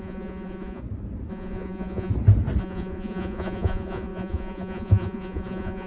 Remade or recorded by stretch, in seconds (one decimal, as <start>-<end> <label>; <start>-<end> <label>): 0.0-0.8 remade; 0.8-1.3 recorded; 1.3-2.1 remade; 2.1-2.6 recorded; 2.6-5.9 remade